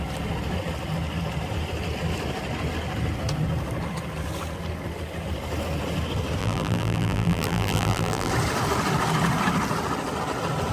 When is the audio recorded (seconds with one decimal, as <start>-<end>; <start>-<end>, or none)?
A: 0.0-6.4; 8.3-10.7